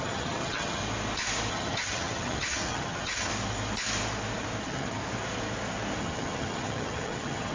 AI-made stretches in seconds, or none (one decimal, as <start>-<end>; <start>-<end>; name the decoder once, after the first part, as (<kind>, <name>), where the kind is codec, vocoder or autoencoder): 0.0-0.8 (vocoder, HiFi-GAN); 1.5-3.3; 4.6-5.0; 6.0-7.5